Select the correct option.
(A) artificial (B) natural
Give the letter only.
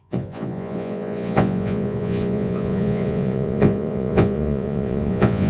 A